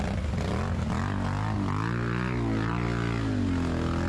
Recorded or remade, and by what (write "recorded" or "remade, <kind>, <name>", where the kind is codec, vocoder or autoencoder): recorded